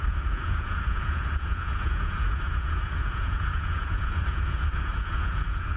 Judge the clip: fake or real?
fake